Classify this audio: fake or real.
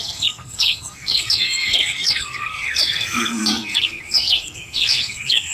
fake